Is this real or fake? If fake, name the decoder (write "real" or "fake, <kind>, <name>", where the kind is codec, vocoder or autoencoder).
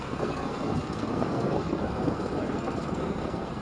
fake, codec, SNAC